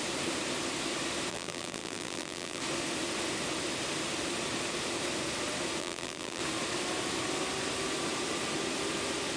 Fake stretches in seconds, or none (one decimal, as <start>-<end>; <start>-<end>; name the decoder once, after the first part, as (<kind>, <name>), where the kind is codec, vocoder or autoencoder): 1.3-2.6 (vocoder, BigVGAN v2); 5.8-6.4